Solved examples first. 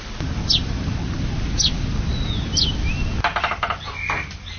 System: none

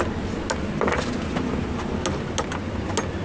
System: none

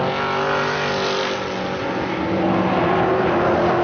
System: none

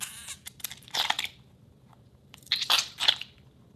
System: vocoder, BigVGAN v2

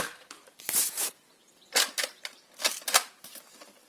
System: none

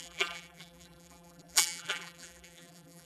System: vocoder, BigVGAN v2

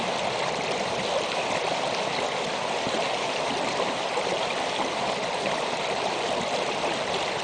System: none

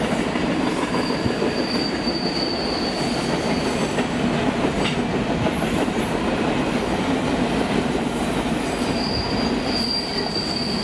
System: none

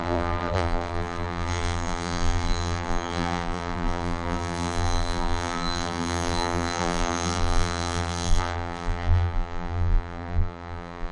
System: vocoder, BigVGAN v2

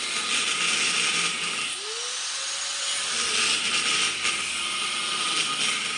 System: none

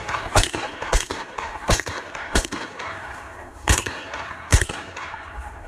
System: codec, SNAC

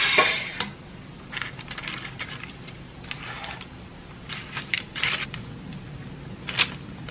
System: none